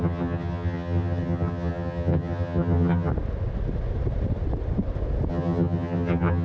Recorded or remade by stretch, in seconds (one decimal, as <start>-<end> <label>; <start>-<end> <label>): 0.0-3.1 remade; 3.1-5.3 recorded; 5.3-6.4 remade